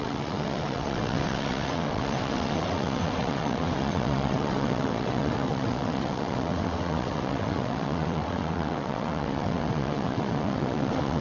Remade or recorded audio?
remade